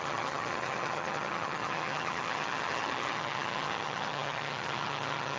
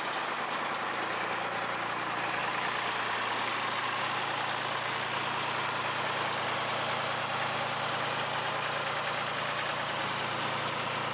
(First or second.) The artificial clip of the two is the first